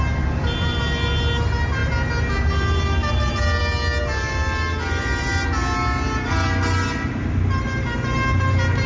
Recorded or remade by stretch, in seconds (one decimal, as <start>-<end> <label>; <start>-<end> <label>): 0.0-8.9 recorded

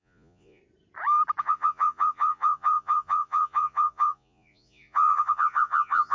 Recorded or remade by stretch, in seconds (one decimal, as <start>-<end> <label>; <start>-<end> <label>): 0.0-0.6 remade; 0.6-1.4 recorded; 1.4-6.1 remade

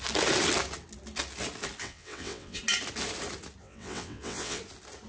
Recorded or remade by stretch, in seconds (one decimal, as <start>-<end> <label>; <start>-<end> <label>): 0.0-1.8 recorded; 1.8-2.6 remade; 2.6-3.6 recorded; 3.6-4.6 remade; 4.6-5.1 recorded